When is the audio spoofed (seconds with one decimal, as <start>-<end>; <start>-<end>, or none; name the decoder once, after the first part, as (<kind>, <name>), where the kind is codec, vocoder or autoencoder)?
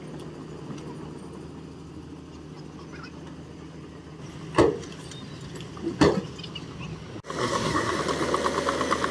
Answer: 7.4-8.0 (codec, SNAC)